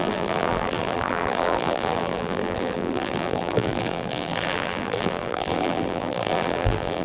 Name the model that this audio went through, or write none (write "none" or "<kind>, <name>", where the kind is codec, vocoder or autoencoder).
vocoder, BigVGAN v2